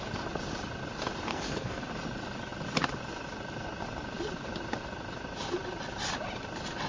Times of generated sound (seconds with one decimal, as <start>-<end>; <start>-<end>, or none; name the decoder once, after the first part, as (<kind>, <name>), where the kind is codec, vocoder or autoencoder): 1.3-1.8 (codec, SNAC)